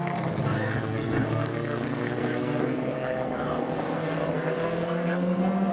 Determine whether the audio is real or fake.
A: fake